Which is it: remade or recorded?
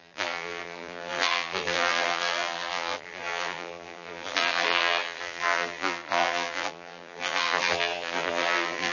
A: remade